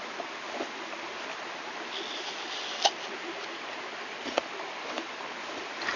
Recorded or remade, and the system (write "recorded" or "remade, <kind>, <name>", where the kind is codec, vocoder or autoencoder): recorded